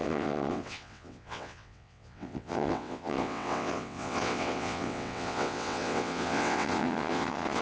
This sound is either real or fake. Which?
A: fake